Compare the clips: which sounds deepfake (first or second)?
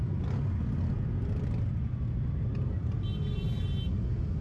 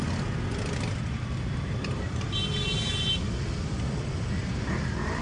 second